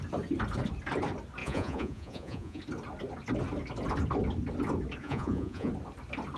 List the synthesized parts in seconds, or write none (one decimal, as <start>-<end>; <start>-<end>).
1.4-2.6; 5.0-5.7